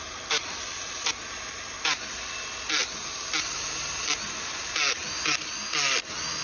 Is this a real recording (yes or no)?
yes